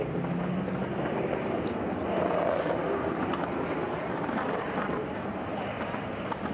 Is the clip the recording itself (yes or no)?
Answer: yes